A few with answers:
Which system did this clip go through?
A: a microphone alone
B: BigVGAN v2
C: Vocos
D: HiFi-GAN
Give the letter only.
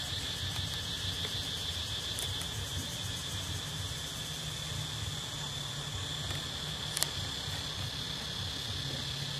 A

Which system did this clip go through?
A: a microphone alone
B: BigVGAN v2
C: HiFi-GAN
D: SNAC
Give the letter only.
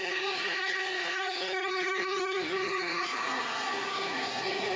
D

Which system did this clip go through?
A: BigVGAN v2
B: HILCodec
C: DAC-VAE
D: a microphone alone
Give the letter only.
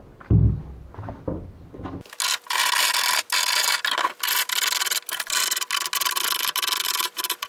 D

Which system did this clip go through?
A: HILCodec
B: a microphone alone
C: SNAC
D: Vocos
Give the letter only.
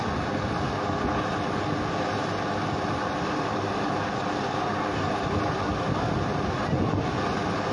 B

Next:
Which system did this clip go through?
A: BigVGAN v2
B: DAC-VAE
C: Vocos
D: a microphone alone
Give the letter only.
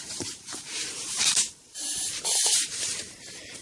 A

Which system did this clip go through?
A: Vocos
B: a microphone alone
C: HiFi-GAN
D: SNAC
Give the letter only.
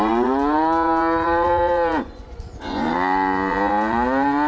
A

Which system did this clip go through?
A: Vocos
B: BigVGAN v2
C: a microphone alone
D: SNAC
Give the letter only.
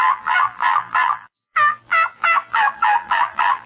B